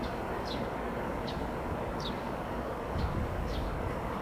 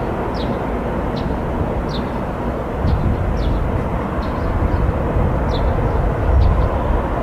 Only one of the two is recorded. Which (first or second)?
second